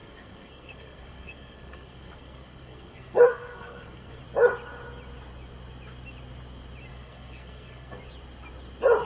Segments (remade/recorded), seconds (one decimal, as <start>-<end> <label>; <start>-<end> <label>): 0.0-4.2 remade; 4.2-6.9 recorded; 6.9-8.0 remade; 8.0-9.1 recorded